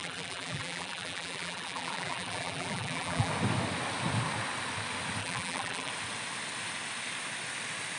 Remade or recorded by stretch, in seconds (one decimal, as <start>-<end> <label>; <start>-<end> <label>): 0.0-3.3 remade; 3.3-5.2 recorded; 5.2-5.9 remade; 5.9-8.0 recorded